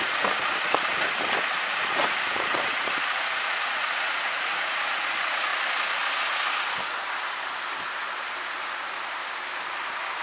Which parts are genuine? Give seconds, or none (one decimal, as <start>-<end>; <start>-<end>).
0.9-1.5; 5.5-10.2